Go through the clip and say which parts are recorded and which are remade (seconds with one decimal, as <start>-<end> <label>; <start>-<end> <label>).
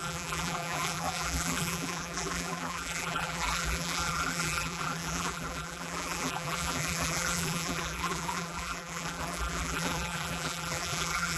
0.0-11.4 remade